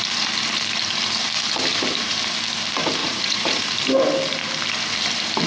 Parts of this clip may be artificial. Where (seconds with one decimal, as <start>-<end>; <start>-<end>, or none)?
3.0-3.6